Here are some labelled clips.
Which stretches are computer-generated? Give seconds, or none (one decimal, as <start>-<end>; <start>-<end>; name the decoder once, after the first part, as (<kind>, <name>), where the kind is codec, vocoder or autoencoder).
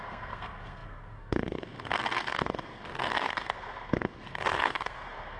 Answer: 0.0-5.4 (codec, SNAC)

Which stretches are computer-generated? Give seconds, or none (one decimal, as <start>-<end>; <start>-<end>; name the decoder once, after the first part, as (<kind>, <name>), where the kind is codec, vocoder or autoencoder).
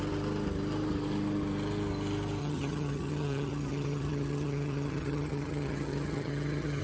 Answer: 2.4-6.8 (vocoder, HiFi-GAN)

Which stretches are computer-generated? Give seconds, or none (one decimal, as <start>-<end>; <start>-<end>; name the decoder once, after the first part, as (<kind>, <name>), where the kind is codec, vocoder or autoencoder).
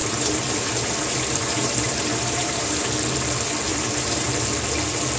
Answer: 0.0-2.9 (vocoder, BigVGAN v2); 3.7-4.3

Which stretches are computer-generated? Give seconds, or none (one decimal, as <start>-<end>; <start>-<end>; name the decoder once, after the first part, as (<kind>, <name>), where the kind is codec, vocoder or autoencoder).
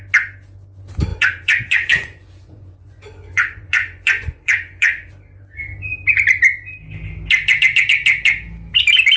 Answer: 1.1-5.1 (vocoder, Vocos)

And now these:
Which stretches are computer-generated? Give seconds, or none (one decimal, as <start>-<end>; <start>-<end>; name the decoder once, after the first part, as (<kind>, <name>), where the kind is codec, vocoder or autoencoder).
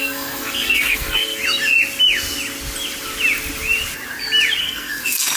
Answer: 0.0-1.4 (codec, SNAC); 4.6-5.4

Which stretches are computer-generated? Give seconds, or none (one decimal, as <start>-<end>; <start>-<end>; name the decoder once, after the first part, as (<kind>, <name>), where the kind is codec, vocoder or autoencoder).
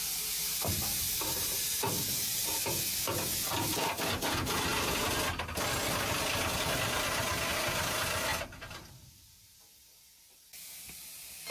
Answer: 8.3-8.9 (vocoder, BigVGAN v2)